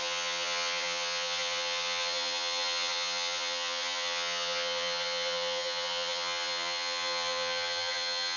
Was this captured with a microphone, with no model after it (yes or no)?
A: no